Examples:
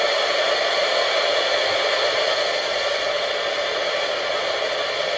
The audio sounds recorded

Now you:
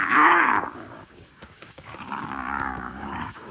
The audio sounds remade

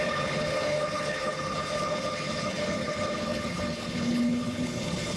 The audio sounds remade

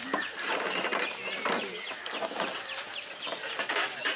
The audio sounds recorded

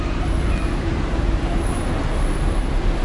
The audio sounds remade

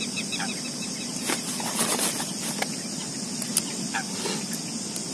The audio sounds recorded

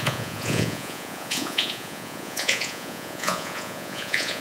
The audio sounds remade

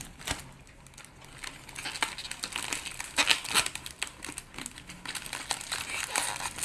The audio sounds recorded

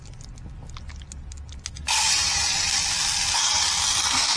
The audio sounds recorded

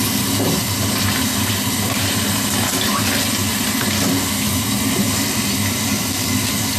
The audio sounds recorded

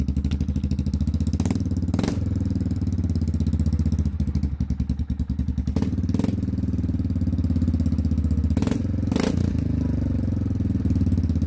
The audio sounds recorded